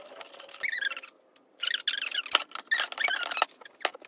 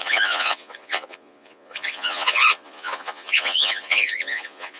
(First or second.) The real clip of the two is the first